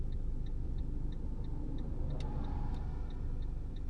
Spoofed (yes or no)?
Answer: no